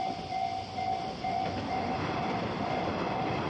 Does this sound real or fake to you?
fake